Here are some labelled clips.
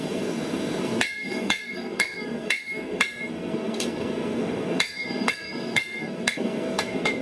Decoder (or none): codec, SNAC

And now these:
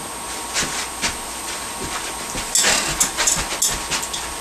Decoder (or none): none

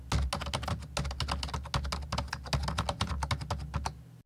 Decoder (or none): none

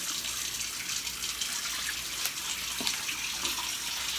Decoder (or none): none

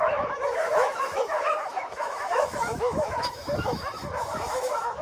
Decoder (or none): autoencoder, DAC-VAE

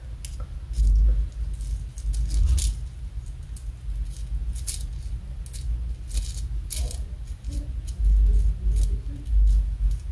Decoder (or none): none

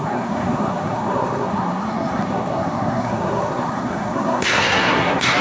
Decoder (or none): codec, SNAC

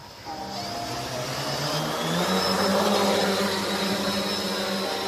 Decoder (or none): none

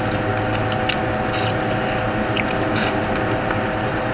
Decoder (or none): none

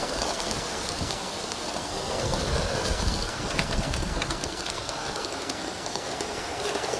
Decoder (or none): codec, SNAC